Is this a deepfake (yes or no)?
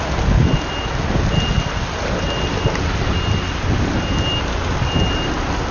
no